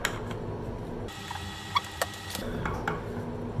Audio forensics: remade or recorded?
recorded